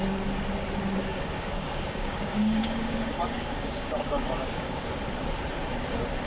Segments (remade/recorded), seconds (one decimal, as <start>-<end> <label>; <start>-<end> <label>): 0.0-1.1 recorded; 1.1-4.9 remade; 4.9-6.3 recorded

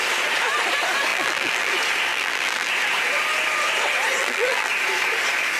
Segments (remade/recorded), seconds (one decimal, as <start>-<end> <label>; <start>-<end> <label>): 0.0-1.1 recorded; 1.1-1.7 remade; 1.7-2.1 recorded; 2.1-2.7 remade; 2.7-4.2 recorded; 4.2-4.7 remade; 4.7-5.6 recorded

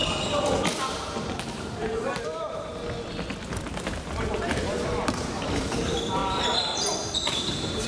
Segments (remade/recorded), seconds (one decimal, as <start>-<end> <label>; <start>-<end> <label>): 0.0-0.9 recorded; 0.9-2.7 remade; 2.7-4.3 recorded; 4.3-6.2 remade; 6.2-6.9 recorded; 6.9-7.9 remade

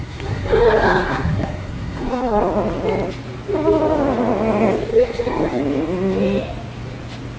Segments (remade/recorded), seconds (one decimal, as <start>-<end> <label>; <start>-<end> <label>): 0.0-2.5 remade; 2.5-4.9 recorded; 4.9-5.6 remade; 5.6-7.4 recorded

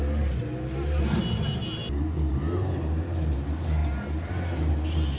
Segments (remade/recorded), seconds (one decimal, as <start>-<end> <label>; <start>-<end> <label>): 0.0-5.2 recorded

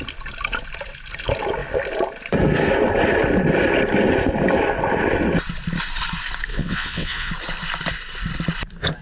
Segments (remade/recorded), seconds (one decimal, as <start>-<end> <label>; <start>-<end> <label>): 0.0-6.5 recorded; 6.5-7.3 remade; 7.3-9.0 recorded

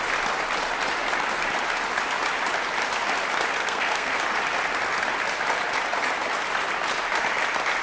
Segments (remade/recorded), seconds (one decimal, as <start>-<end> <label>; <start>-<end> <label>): 0.0-3.6 recorded; 3.6-4.2 remade; 4.2-7.8 recorded